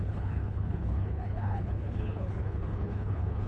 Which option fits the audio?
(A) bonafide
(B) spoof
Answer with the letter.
B